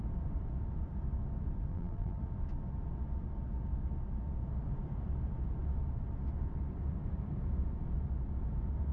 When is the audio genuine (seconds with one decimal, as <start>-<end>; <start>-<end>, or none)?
0.0-1.7; 2.2-8.9